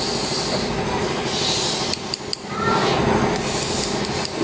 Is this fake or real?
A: real